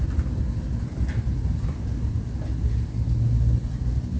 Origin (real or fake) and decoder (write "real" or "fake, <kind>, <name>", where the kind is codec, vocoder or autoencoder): real